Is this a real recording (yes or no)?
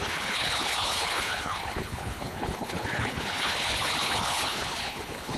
no